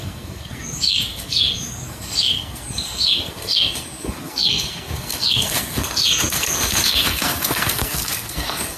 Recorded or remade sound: remade